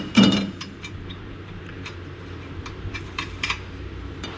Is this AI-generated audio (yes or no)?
yes